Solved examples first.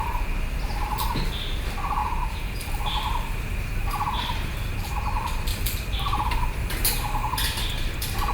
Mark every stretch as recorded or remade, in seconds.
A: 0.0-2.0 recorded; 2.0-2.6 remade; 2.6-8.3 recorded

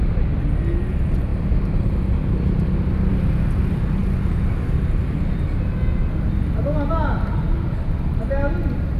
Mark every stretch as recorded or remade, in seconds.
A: 0.0-9.0 recorded

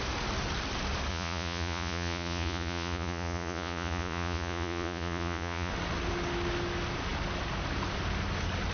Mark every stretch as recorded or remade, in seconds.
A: 0.0-1.1 recorded; 1.1-5.7 remade; 5.7-8.7 recorded

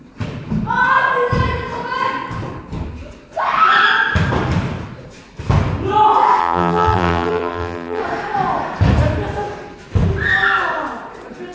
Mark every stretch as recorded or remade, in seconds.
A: 0.0-6.4 recorded; 6.4-8.0 remade; 8.0-11.5 recorded